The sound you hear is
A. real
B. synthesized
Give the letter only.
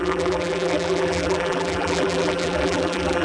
B